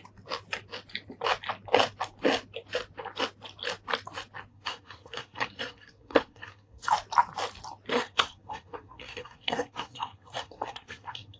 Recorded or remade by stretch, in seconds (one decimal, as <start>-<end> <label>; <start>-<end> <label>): 0.0-4.5 recorded; 4.5-6.9 remade; 6.9-7.9 recorded; 7.9-11.4 remade